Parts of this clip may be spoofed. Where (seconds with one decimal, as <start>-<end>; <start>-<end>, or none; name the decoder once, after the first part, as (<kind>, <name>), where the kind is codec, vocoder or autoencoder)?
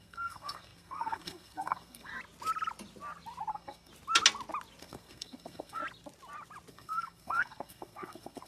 0.0-2.1 (codec, SNAC); 3.5-3.9; 4.8-5.8; 6.7-8.5